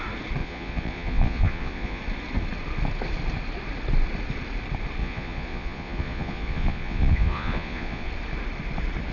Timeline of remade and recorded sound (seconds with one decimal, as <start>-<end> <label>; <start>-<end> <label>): 0.0-0.4 recorded; 0.4-2.0 remade; 2.0-5.0 recorded; 5.0-8.1 remade; 8.1-9.1 recorded